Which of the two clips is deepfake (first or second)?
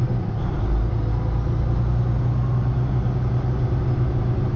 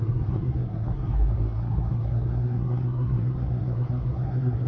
second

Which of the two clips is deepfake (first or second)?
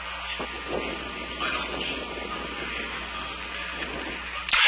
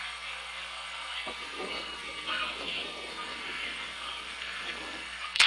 second